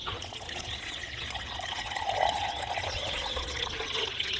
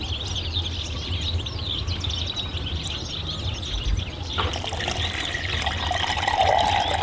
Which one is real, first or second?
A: second